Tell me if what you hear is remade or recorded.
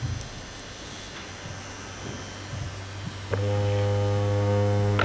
recorded